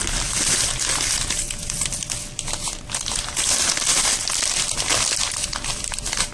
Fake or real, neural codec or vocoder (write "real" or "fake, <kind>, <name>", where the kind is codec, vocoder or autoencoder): real